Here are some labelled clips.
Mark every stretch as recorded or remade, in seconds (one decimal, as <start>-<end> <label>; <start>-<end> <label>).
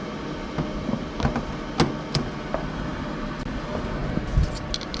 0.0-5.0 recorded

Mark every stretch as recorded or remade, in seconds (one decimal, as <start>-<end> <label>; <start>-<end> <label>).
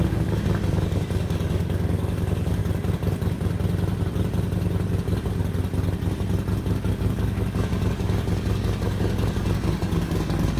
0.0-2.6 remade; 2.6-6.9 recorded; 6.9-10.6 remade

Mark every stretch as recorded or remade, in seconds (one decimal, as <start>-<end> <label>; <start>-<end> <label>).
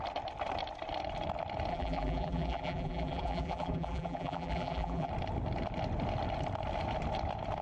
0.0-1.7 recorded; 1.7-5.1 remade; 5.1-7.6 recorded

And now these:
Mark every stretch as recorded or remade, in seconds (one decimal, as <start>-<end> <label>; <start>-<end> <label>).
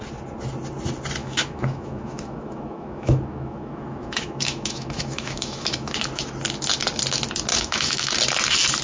0.0-1.2 recorded; 1.2-6.2 remade; 6.2-7.5 recorded; 7.5-8.1 remade; 8.1-8.8 recorded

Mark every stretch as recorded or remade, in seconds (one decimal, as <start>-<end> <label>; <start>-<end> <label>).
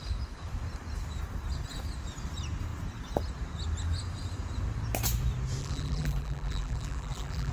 0.0-5.6 recorded; 5.6-7.5 remade